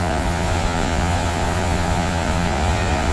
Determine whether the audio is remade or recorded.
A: remade